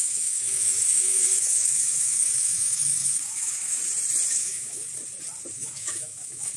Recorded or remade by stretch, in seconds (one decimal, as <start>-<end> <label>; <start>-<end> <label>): 0.0-3.8 remade; 3.8-4.3 recorded; 4.3-4.8 remade; 4.8-5.5 recorded; 5.5-6.6 remade